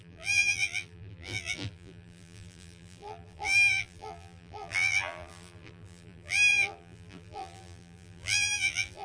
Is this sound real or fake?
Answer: fake